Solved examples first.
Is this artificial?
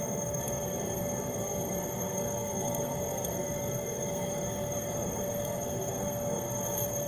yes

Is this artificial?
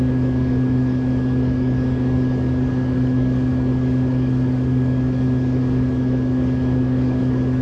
yes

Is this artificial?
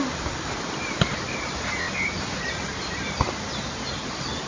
no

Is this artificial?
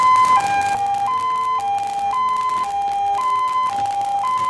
no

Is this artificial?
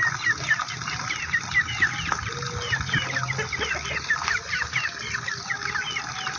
no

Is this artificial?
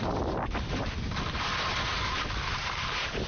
yes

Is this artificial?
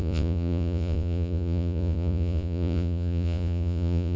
yes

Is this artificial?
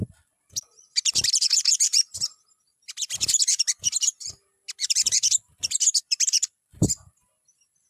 yes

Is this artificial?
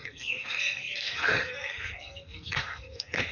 yes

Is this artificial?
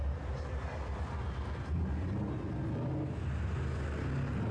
no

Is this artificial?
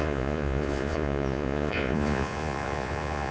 yes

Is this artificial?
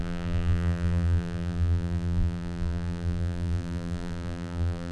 yes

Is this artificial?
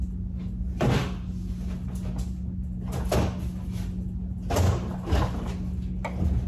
no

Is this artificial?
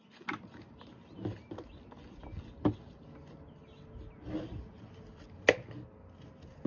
no